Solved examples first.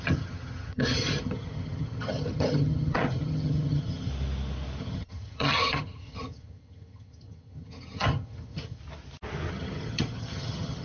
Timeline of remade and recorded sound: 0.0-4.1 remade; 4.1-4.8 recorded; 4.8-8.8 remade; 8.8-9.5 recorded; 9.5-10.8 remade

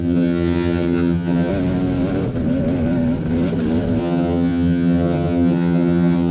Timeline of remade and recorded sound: 0.0-1.5 remade; 1.5-4.0 recorded; 4.0-6.3 remade

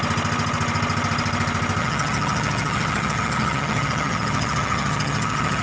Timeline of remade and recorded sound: 0.0-1.8 recorded; 1.8-5.6 remade

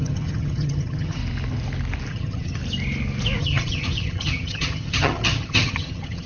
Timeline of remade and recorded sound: 0.0-1.2 remade; 1.2-2.1 recorded; 2.1-2.6 remade; 2.6-3.4 recorded; 3.4-6.3 remade

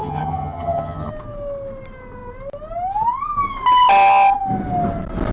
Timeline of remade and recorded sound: 0.0-1.1 remade; 1.1-5.3 recorded